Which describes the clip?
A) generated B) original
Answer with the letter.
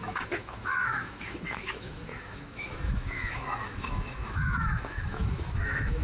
A